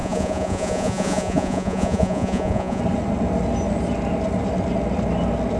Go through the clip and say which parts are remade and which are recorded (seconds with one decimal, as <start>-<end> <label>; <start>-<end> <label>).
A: 0.0-2.8 remade; 2.8-5.6 recorded